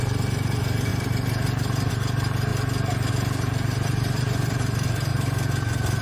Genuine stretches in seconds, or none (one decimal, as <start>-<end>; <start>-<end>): 2.5-3.1; 5.1-6.0